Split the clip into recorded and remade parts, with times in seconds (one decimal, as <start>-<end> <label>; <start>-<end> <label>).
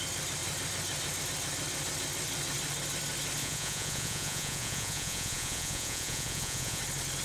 0.0-3.4 recorded; 3.4-6.8 remade; 6.8-7.2 recorded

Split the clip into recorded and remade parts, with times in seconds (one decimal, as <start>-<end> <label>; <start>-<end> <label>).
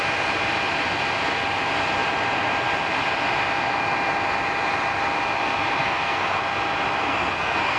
0.0-5.8 recorded; 5.8-6.4 remade; 6.4-7.0 recorded; 7.0-7.8 remade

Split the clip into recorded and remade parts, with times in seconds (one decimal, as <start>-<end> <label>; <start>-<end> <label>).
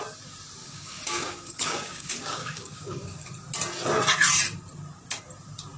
0.0-0.6 recorded; 0.6-3.3 remade; 3.3-5.8 recorded